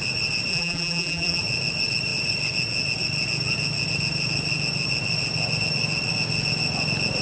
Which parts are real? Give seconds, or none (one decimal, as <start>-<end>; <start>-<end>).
0.0-0.5; 1.4-7.2

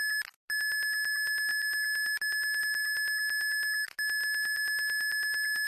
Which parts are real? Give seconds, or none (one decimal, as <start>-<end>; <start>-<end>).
0.0-5.7

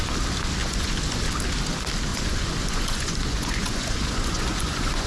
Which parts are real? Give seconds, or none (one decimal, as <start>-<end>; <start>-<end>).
0.0-0.6; 1.3-2.1

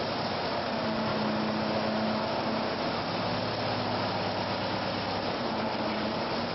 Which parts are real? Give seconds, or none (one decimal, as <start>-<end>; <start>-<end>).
1.1-5.0

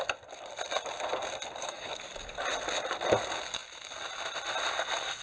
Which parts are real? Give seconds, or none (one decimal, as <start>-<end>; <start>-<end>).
0.0-1.6; 2.4-5.2

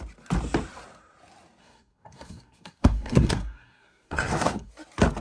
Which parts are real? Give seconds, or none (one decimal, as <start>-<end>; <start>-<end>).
0.0-1.6; 4.7-5.2

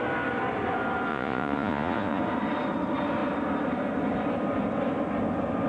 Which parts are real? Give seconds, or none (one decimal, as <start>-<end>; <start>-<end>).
0.0-1.1; 2.2-5.7

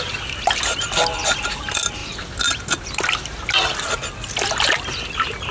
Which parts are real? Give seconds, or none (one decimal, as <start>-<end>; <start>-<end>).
0.0-5.5